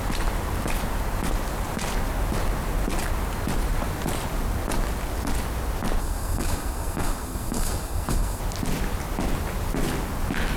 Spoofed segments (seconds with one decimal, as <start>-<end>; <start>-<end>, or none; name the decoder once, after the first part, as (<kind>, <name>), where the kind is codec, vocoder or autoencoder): 6.0-8.4 (codec, SNAC)